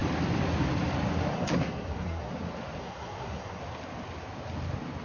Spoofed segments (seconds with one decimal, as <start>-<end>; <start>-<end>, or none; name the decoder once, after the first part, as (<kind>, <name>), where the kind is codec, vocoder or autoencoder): 1.3-2.3 (codec, SNAC); 2.8-3.6